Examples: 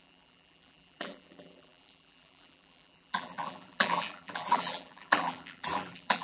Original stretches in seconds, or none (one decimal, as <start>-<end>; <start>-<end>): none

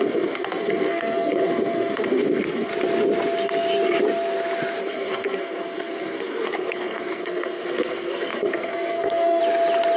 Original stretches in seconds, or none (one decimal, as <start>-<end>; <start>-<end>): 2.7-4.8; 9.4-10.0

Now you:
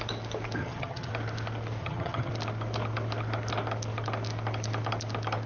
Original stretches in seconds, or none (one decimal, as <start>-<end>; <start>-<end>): 0.0-0.6; 1.1-1.8; 2.3-5.5

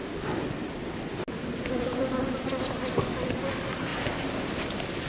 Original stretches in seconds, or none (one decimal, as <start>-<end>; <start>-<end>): 0.0-5.1

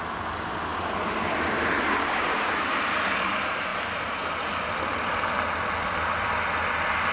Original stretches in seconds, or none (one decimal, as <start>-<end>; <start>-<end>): 0.0-7.1

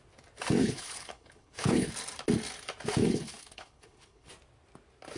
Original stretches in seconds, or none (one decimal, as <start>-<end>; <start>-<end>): 0.0-0.6; 1.9-3.0; 4.3-5.2

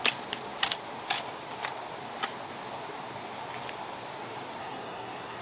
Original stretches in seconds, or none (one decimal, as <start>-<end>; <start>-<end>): 0.0-4.6

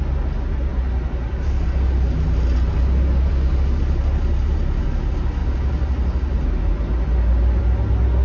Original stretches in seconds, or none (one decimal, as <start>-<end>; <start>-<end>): 0.0-8.2